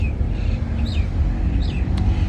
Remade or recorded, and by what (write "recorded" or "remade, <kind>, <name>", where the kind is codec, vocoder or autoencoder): recorded